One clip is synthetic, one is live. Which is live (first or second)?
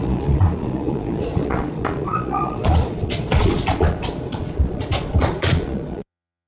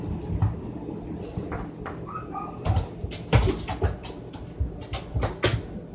second